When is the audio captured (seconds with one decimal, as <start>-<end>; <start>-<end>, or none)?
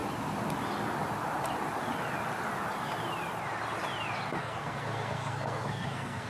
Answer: 0.0-4.4